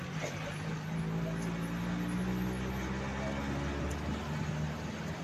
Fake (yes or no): no